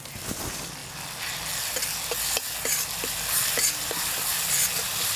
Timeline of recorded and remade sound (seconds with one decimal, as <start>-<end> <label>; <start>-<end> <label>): 0.0-5.2 recorded